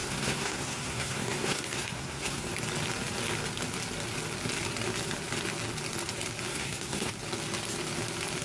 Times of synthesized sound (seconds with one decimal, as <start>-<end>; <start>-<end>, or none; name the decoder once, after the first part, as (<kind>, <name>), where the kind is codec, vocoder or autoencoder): 0.0-2.5 (codec, SNAC); 6.5-7.1